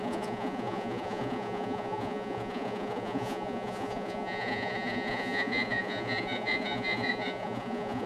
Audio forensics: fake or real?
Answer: fake